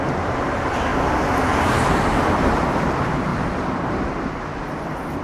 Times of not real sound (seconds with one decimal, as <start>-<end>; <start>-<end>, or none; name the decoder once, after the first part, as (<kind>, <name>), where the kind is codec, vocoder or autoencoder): 0.0-0.9 (vocoder, BigVGAN v2); 1.6-5.2